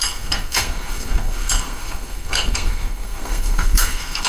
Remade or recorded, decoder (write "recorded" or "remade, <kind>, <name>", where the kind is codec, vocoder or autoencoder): remade, codec, SNAC